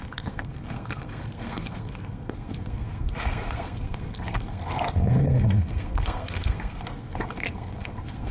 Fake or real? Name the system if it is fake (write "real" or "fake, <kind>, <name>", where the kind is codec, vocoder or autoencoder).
fake, codec, SNAC